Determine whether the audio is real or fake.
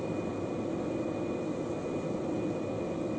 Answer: real